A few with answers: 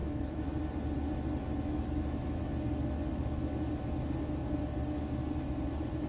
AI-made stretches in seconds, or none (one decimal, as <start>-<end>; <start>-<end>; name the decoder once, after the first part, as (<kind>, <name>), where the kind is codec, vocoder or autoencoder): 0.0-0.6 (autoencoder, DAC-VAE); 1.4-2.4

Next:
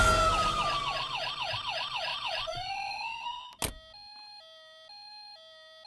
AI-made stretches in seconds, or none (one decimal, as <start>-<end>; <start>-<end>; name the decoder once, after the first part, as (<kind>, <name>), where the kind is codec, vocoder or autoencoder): 2.1-3.4 (vocoder, Vocos)

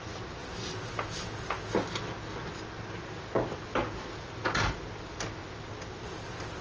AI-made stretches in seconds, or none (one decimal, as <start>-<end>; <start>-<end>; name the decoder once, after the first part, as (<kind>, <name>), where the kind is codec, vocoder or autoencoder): none

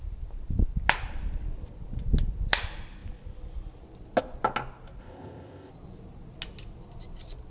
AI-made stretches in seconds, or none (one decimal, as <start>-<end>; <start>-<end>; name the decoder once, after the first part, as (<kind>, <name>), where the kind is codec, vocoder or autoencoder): 5.0-5.7 (codec, ZipCodec)

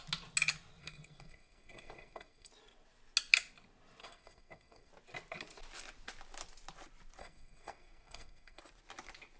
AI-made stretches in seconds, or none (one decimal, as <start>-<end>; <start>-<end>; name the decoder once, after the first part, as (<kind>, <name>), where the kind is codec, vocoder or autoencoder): 0.8-2.5 (codec, SNAC); 4.0-4.9; 7.2-8.6